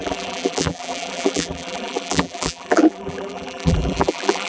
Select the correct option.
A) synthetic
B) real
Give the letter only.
A